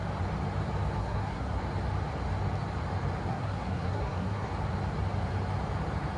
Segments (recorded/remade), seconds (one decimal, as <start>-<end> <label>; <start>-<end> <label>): 0.0-1.0 recorded; 1.0-1.6 remade; 1.6-3.3 recorded; 3.3-4.5 remade; 4.5-6.2 recorded